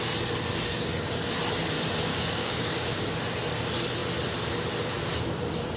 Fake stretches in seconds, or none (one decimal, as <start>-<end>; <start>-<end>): 2.1-3.0